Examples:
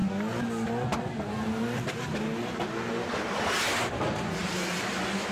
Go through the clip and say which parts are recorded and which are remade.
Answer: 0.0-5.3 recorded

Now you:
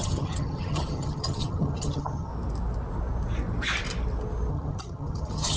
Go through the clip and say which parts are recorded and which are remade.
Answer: 0.0-2.3 remade; 2.3-4.5 recorded; 4.5-5.6 remade

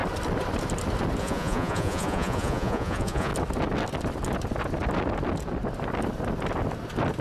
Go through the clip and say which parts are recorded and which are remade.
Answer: 0.0-1.2 recorded; 1.2-3.3 remade; 3.3-7.2 recorded

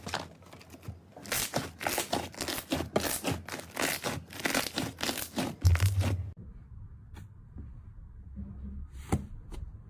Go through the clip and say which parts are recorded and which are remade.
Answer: 0.0-9.9 recorded

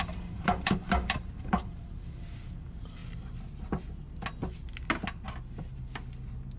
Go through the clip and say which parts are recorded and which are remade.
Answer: 0.0-3.0 remade; 3.0-6.6 recorded

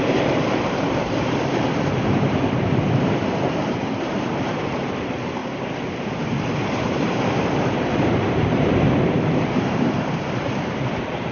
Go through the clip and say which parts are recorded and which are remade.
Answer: 0.0-5.4 remade; 5.4-6.0 recorded; 6.0-11.3 remade

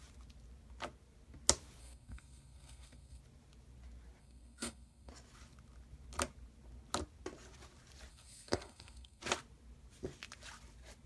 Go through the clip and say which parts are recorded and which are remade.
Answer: 0.0-1.8 recorded; 1.8-3.2 remade; 3.2-4.2 recorded; 4.2-5.1 remade; 5.1-8.1 recorded; 8.1-9.2 remade; 9.2-11.1 recorded